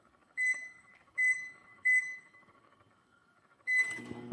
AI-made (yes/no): yes